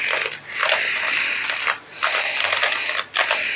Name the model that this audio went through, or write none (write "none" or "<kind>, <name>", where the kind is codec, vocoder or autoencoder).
none